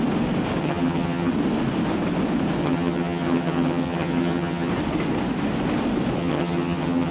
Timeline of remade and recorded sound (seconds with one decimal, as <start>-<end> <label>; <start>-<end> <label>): 0.0-0.6 recorded; 0.6-1.3 remade; 1.3-2.6 recorded; 2.6-4.7 remade; 4.7-6.2 recorded; 6.2-7.1 remade